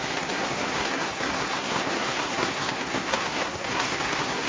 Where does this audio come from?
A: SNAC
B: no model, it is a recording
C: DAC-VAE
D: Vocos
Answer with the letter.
A